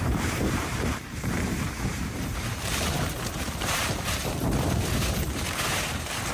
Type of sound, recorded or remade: remade